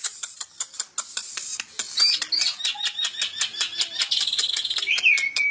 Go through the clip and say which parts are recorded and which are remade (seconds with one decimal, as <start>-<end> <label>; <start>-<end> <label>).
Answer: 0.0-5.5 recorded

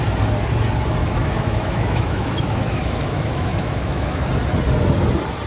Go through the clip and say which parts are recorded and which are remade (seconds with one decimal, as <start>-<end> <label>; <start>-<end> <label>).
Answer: 0.0-1.0 recorded; 1.0-4.3 remade; 4.3-5.5 recorded

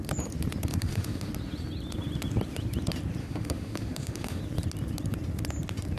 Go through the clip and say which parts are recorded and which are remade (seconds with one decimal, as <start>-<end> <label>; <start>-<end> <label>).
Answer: 0.0-0.7 recorded; 0.7-1.3 remade; 1.3-3.2 recorded; 3.2-4.4 remade; 4.4-6.0 recorded

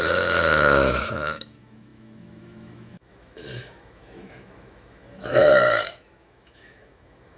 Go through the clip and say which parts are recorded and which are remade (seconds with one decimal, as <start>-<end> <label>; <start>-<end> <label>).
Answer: 0.0-7.4 remade

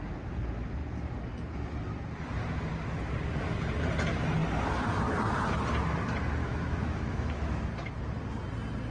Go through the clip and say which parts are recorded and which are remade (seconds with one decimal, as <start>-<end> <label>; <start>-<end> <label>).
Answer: 0.0-6.4 recorded; 6.4-7.6 remade; 7.6-8.9 recorded